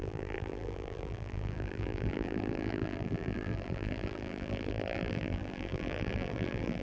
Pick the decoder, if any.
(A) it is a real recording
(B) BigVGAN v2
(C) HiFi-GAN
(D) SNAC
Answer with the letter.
B